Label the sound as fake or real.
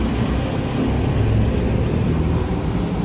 real